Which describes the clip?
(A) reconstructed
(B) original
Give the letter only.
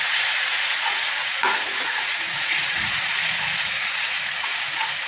A